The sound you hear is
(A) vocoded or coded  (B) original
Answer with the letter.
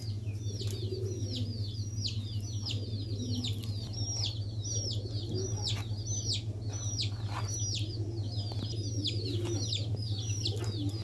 B